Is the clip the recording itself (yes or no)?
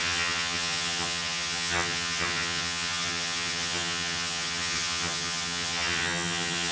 no